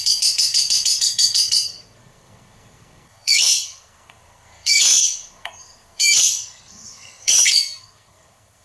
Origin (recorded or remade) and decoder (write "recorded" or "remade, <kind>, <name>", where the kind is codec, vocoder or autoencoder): remade, codec, SNAC